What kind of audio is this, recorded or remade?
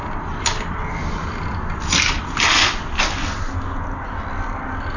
recorded